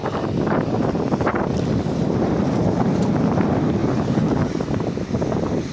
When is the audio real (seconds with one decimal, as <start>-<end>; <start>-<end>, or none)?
0.0-5.7